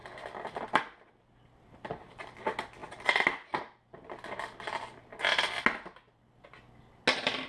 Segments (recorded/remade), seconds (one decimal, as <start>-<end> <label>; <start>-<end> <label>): 0.0-7.5 recorded